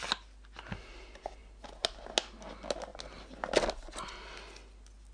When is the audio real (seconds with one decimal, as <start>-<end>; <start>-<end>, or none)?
0.0-5.1